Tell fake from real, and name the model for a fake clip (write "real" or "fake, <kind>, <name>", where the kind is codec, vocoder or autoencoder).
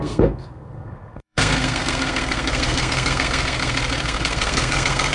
fake, codec, SNAC